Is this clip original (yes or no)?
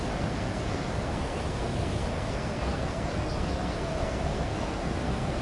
no